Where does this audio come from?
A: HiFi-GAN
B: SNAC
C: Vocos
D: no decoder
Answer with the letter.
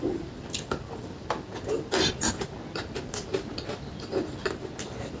D